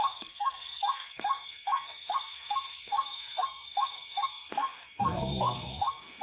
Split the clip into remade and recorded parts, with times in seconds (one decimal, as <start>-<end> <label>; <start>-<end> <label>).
0.0-6.2 remade